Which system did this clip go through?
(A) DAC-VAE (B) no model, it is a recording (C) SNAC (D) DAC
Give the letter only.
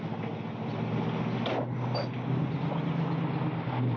B